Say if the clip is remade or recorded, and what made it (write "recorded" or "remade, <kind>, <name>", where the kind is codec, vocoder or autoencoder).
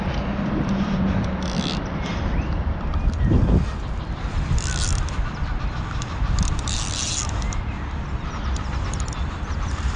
remade, vocoder, BigVGAN v2